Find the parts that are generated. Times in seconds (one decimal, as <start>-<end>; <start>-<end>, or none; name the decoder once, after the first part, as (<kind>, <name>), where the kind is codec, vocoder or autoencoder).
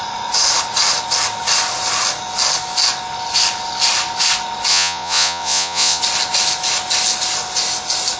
4.7-6.0 (vocoder, Vocos)